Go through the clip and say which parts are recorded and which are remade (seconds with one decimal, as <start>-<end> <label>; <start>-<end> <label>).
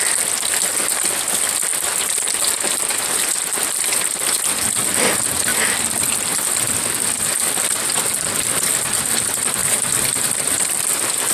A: 0.0-9.6 recorded; 9.6-10.7 remade; 10.7-11.3 recorded